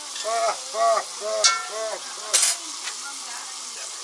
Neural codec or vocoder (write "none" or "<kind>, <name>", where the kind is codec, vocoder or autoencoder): none